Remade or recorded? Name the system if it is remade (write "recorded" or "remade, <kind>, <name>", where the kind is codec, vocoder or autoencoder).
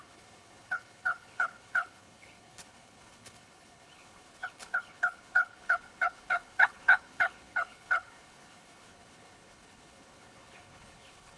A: remade, codec, HILCodec